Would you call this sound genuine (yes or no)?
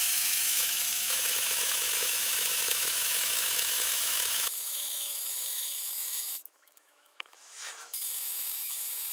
no